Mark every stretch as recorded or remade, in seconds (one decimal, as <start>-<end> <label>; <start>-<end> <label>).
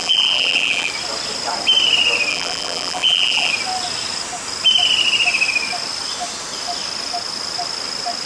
0.0-0.9 remade; 0.9-2.3 recorded; 2.3-3.5 remade; 3.5-8.3 recorded